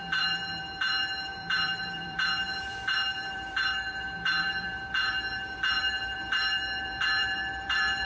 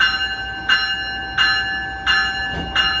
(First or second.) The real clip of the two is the second